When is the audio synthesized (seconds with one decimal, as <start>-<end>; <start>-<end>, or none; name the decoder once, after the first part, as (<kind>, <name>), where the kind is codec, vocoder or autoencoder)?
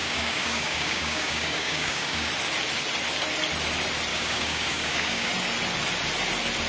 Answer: 0.0-2.3 (codec, DAC); 4.1-5.3